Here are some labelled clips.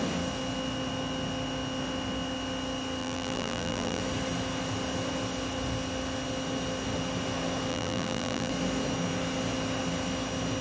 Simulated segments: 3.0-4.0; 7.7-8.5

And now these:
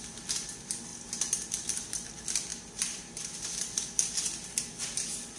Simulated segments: 0.9-2.1; 2.5-3.3

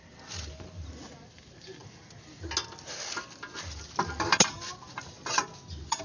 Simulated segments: none